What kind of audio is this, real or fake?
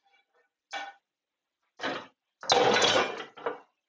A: real